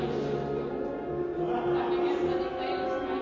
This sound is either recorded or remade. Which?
recorded